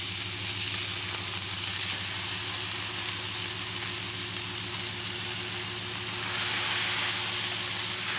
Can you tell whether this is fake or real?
real